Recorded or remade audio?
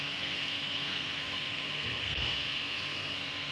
remade